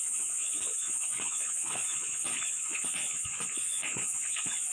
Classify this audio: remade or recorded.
remade